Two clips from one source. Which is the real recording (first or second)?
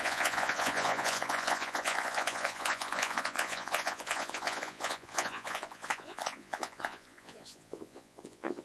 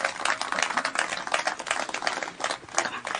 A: second